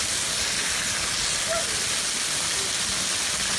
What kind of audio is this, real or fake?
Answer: real